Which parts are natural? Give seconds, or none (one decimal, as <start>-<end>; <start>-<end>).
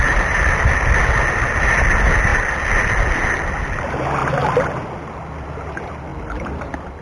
0.0-7.0